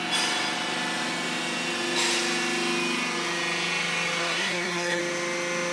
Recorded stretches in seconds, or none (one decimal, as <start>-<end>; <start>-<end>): 0.0-4.2; 5.0-5.7